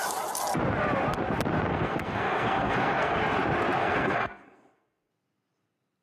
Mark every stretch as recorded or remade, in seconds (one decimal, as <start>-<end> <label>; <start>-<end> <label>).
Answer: 0.0-1.7 recorded; 1.7-3.2 remade; 3.2-3.8 recorded; 3.8-5.1 remade; 5.1-6.0 recorded